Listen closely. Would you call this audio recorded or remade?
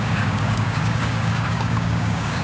remade